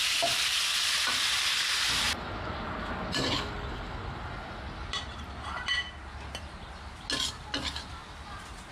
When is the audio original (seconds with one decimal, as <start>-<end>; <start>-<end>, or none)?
0.0-8.7